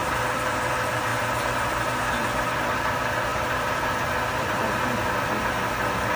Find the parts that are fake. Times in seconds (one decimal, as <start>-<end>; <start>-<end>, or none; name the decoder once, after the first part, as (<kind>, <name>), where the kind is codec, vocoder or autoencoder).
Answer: 0.0-0.7 (vocoder, BigVGAN v2); 1.1-1.8; 3.3-5.0